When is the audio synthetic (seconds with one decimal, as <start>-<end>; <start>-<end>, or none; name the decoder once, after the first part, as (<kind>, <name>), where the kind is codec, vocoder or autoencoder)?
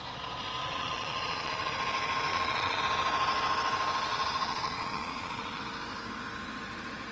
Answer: 0.6-1.7 (vocoder, Vocos); 2.3-2.8; 4.1-5.6